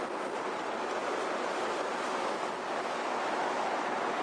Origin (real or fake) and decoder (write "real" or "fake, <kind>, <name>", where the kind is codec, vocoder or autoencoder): real